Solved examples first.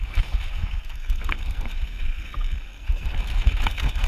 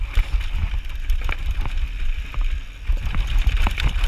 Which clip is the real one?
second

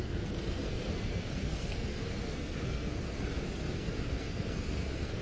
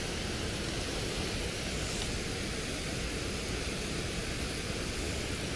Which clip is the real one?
second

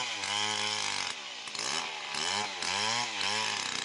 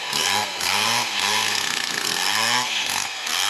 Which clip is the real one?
first